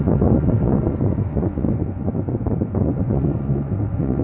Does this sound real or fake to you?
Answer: fake